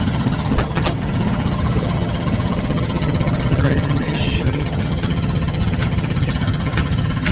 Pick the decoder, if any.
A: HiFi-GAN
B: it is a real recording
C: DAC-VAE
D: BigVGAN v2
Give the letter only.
A